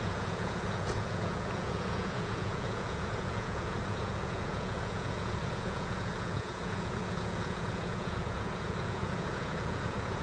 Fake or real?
fake